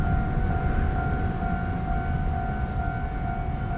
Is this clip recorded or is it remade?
recorded